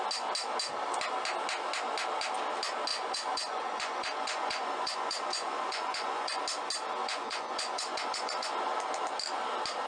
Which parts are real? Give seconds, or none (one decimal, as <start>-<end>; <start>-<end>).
0.0-2.9; 6.4-7.0; 8.6-9.9